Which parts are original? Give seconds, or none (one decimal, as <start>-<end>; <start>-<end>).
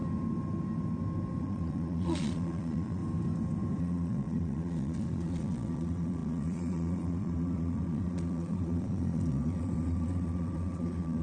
0.0-1.4; 3.0-3.8